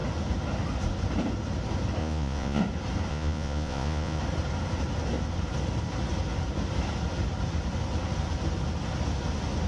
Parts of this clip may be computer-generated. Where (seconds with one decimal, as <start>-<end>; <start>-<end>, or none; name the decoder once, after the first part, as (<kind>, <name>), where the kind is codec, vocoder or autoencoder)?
2.0-2.6 (vocoder, Vocos); 3.1-4.2

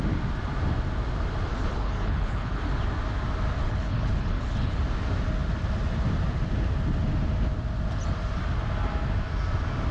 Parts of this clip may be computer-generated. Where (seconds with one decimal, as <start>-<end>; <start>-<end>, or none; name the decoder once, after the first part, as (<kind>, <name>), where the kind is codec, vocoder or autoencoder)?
1.5-2.6 (codec, HILCodec); 3.6-4.8

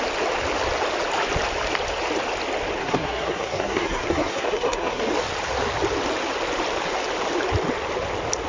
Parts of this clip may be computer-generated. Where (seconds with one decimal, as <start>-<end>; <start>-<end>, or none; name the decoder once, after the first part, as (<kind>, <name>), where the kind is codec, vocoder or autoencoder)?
2.8-5.0 (codec, SNAC)

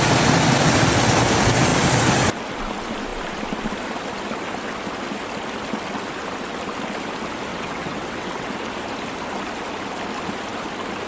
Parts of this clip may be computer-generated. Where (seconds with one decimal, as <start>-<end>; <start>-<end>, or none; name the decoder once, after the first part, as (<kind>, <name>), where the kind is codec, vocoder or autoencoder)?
7.5-8.5 (vocoder, WaveNeXt)